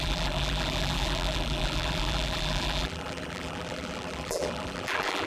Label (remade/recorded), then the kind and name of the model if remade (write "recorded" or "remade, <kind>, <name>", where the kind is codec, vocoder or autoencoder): remade, vocoder, BigVGAN v2